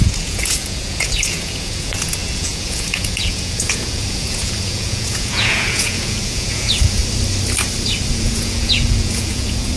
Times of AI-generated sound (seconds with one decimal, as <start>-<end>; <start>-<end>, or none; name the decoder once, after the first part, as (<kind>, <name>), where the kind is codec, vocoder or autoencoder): 0.0-7.0 (vocoder, Vocos); 8.1-9.8